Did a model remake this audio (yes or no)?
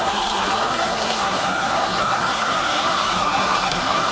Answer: yes